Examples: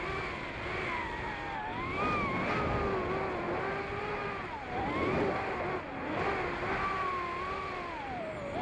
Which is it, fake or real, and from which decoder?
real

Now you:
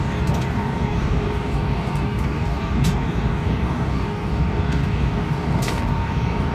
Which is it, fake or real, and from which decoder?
fake, codec, DAC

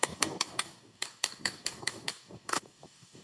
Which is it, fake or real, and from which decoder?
fake, codec, DAC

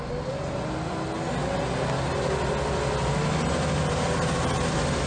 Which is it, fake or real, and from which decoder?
real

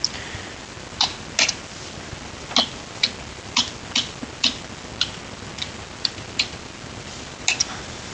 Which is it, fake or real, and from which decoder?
real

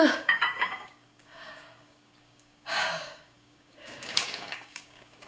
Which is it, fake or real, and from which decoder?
fake, codec, DAC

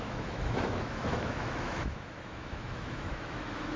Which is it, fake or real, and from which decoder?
fake, autoencoder, DAC-VAE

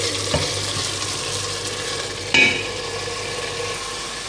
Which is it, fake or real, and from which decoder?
real